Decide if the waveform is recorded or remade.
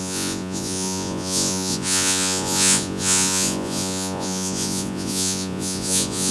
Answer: remade